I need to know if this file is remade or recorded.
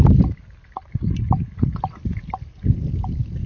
recorded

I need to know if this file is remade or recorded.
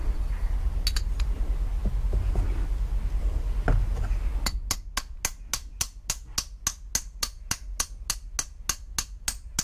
recorded